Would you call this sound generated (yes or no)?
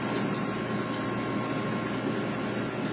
no